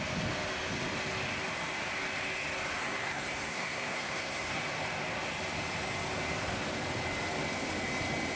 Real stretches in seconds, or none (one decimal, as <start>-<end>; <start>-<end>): 0.0-2.8; 4.6-8.4